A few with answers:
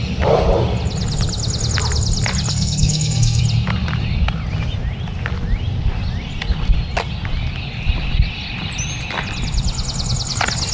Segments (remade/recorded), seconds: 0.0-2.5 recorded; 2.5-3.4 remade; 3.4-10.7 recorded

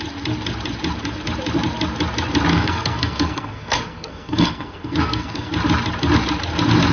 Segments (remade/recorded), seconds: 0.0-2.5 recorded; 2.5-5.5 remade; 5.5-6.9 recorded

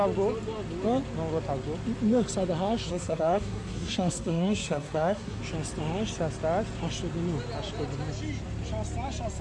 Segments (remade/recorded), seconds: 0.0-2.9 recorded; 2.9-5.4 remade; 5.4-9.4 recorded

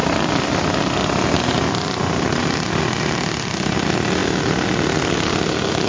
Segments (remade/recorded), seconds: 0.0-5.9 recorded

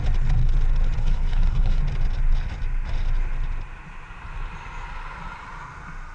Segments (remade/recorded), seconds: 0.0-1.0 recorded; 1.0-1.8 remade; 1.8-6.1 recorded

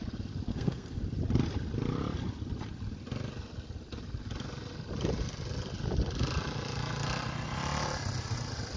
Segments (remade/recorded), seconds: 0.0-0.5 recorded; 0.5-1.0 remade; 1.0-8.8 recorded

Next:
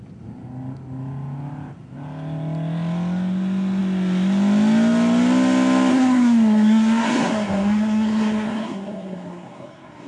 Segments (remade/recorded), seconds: 0.0-5.9 recorded; 5.9-10.1 remade

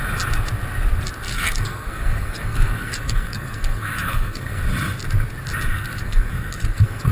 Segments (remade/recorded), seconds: 0.0-1.3 recorded; 1.3-4.6 remade; 4.6-5.7 recorded; 5.7-7.1 remade